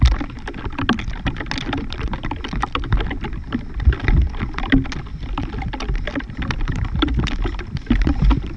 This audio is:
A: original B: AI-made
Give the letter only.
A